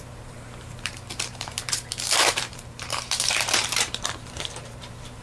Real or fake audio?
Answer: fake